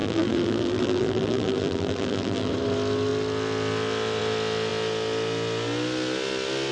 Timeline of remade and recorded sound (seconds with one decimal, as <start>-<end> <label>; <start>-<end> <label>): 0.0-2.5 remade; 2.5-6.7 recorded